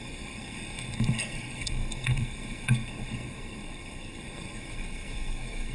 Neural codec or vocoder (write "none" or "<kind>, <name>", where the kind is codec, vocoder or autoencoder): codec, SNAC